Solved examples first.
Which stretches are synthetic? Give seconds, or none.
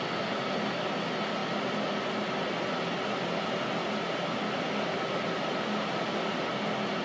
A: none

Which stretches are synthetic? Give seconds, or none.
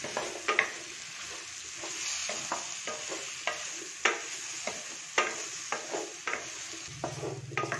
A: none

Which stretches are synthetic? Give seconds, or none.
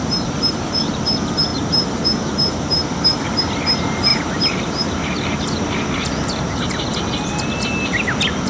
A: 0.0-0.9; 1.5-3.4; 4.1-5.4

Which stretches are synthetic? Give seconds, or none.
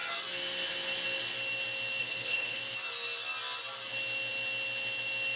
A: 2.0-2.6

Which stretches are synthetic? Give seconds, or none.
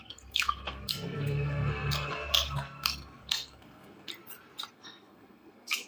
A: 0.0-4.1; 4.7-5.9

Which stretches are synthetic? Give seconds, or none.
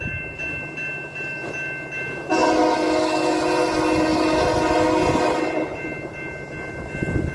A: none